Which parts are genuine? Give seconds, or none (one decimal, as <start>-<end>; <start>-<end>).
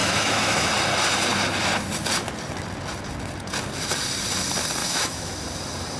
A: 0.7-4.8; 5.3-6.0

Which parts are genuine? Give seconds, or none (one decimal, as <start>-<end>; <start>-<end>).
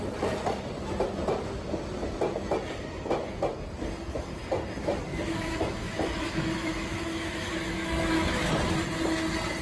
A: 0.0-5.1; 8.6-9.6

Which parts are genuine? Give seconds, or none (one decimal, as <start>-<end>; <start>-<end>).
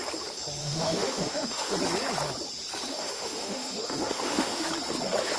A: 0.0-0.6; 1.7-2.9; 4.7-5.4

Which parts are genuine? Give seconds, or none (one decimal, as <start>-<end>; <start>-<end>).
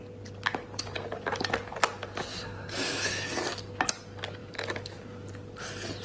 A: 0.0-2.3; 3.3-4.4; 5.0-6.0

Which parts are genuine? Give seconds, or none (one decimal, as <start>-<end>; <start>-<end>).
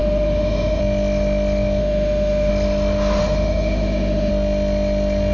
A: 0.8-1.8; 2.5-3.2; 4.3-5.3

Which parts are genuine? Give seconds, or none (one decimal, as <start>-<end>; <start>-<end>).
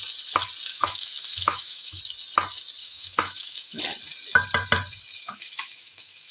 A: 0.0-0.7; 2.0-2.8; 3.8-5.2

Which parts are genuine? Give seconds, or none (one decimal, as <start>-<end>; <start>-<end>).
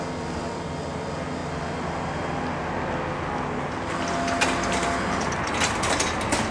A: 0.0-6.5